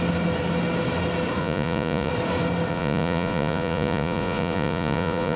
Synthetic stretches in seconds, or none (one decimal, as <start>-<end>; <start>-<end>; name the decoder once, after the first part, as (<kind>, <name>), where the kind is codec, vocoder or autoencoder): 1.4-2.1 (vocoder, Vocos); 2.7-5.4